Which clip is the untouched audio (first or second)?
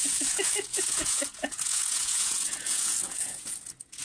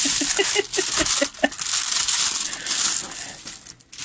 second